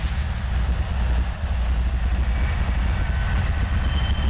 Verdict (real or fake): real